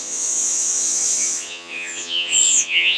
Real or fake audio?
fake